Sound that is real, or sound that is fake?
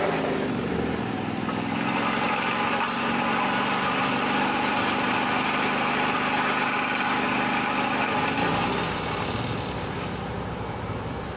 fake